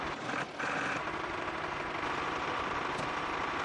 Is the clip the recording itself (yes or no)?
yes